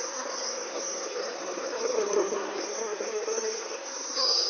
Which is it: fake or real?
fake